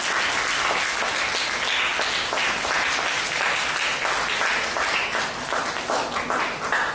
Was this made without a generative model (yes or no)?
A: yes